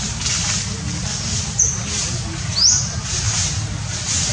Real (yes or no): yes